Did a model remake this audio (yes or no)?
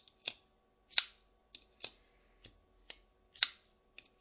no